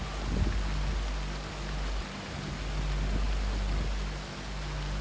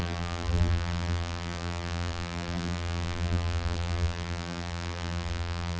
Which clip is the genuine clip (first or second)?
first